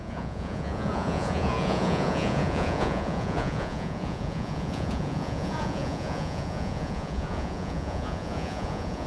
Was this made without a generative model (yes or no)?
no